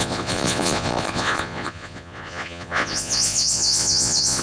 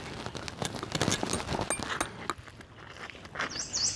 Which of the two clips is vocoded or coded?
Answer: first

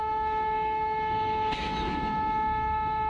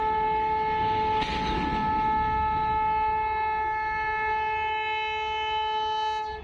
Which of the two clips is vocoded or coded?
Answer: first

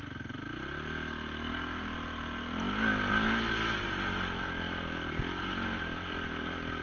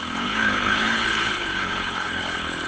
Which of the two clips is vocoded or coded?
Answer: second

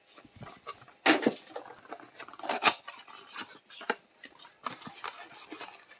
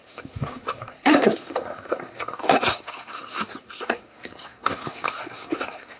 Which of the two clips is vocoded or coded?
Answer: second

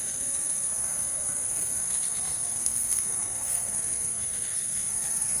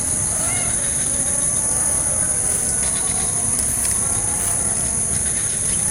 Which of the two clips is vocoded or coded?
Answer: first